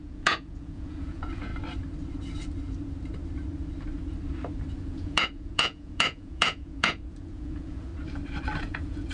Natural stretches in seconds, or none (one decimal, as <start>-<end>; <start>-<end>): 1.5-4.7; 7.9-8.6